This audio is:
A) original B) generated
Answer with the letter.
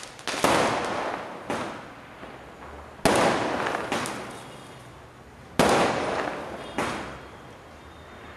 A